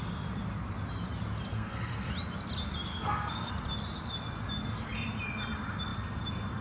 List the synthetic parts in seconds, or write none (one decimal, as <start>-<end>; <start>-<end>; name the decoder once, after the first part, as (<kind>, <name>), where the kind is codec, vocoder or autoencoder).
1.5-2.1 (codec, SNAC); 2.9-3.5